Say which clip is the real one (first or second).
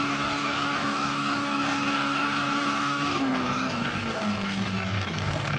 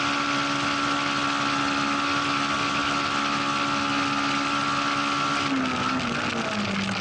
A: second